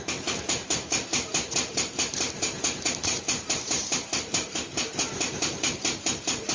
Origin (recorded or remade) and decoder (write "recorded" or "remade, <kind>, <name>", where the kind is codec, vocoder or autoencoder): remade, vocoder, BigVGAN v2